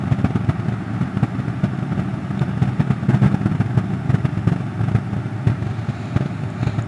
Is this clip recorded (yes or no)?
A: yes